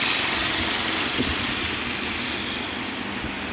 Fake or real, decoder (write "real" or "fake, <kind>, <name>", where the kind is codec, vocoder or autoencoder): real